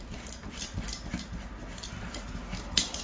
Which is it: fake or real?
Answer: real